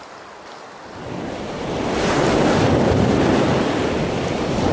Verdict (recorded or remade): recorded